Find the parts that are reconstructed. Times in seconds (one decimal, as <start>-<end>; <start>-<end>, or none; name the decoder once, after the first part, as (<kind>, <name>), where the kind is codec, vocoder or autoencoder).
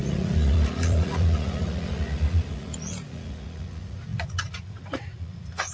0.0-5.7 (vocoder, Vocos)